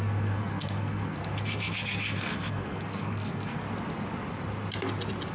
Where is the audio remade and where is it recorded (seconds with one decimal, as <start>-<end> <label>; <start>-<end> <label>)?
0.0-3.6 remade; 3.6-5.3 recorded